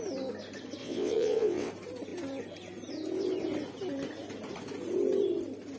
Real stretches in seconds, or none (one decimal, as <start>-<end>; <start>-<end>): 0.0-0.8; 1.7-5.8